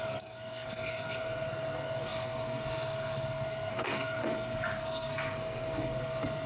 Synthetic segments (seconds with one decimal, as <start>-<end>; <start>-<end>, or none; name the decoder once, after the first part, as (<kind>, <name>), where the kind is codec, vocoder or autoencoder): 0.0-6.5 (codec, SNAC)